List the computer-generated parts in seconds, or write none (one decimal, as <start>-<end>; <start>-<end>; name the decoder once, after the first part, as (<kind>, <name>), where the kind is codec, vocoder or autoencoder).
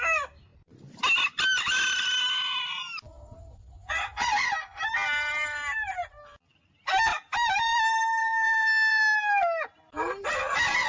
7.1-9.3 (vocoder, BigVGAN v2)